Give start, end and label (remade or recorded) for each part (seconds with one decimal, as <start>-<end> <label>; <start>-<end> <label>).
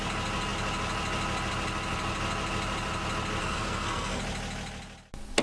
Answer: 0.0-3.4 recorded; 3.4-4.2 remade; 4.2-5.4 recorded